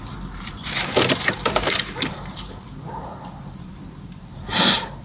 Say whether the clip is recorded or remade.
remade